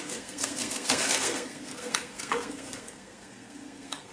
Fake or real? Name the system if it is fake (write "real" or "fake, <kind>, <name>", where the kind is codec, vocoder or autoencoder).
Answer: fake, codec, SNAC